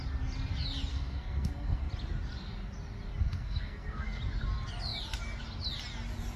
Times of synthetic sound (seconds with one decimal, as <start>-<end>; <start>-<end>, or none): 0.9-1.9; 3.2-4.2